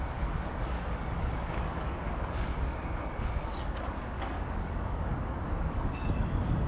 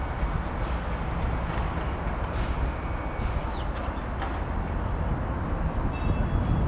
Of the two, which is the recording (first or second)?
second